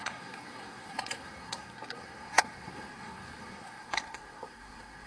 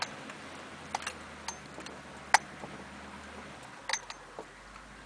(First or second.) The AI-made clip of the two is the first